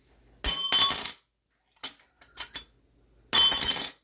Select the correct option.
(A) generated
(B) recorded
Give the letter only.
B